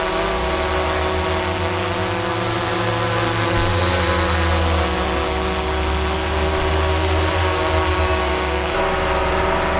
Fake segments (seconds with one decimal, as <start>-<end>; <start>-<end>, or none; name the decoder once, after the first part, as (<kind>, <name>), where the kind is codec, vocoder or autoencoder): 8.0-8.8 (codec, DAC)